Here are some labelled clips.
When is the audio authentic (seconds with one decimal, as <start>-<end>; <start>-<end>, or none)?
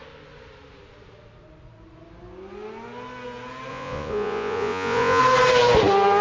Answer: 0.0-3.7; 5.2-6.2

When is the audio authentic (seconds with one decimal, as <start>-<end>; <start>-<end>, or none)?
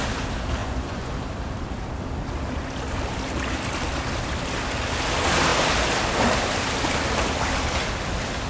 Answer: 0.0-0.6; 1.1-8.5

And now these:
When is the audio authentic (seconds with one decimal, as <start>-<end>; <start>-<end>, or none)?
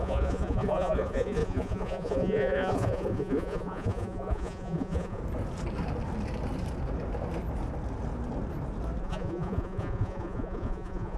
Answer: 5.2-9.0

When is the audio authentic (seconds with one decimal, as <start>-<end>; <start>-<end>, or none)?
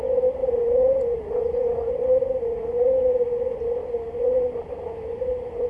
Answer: 0.0-0.4; 1.9-5.7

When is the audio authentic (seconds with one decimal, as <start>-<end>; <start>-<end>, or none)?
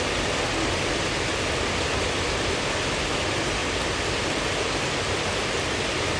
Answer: 0.0-6.2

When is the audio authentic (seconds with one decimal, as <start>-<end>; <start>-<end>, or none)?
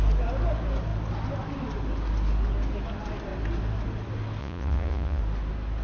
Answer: 0.0-4.4; 5.2-5.8